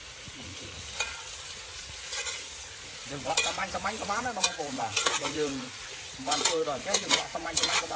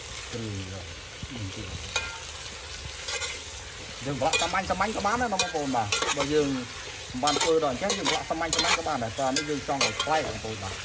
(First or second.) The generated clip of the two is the first